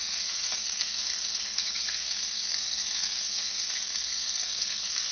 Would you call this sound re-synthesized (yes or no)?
yes